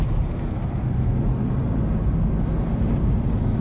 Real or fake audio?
real